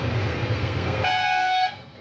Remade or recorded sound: remade